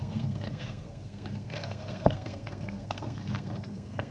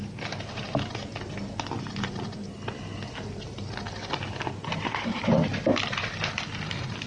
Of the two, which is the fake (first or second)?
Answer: first